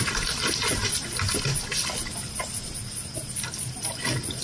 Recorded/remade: recorded